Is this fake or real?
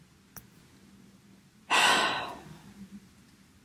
real